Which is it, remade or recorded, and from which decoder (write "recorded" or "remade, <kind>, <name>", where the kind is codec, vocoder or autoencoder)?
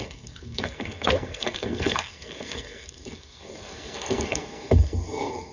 remade, codec, SNAC